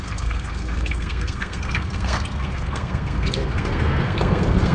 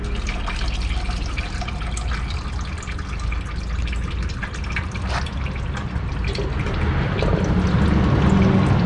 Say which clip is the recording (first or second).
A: second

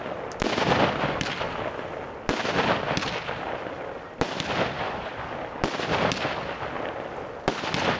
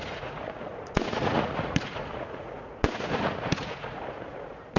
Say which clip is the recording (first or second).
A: first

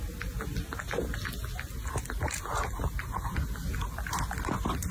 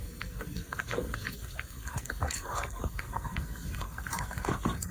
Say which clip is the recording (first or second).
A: first